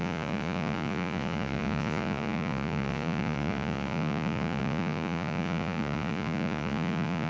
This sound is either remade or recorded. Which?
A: remade